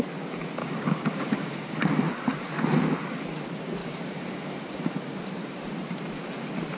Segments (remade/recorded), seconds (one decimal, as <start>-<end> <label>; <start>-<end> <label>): 0.0-0.6 recorded; 0.6-1.8 remade; 1.8-3.8 recorded; 3.8-5.2 remade; 5.2-6.8 recorded